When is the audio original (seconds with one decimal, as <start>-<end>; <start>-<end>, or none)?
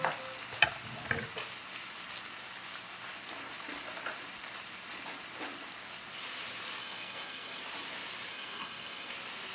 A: 0.0-6.8; 7.6-8.3; 9.1-9.5